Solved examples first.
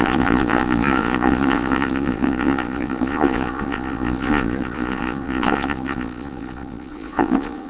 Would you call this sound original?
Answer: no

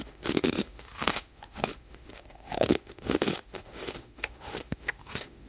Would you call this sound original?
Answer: no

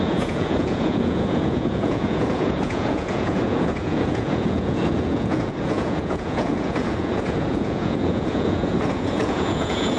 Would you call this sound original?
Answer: no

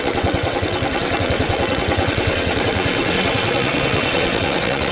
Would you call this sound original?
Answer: no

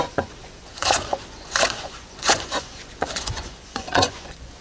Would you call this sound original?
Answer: no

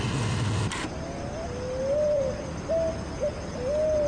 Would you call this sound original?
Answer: yes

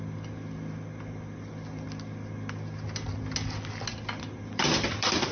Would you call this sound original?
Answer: yes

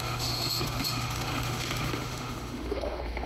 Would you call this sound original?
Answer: no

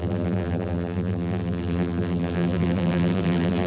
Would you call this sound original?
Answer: no